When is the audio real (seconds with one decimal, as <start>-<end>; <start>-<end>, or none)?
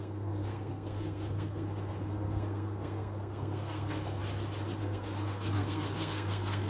4.2-4.8